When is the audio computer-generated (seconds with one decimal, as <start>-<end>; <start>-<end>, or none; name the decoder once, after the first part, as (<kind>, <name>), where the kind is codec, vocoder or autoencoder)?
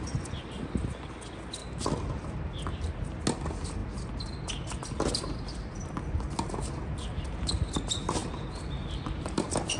1.6-2.9 (vocoder, BigVGAN v2); 8.2-9.8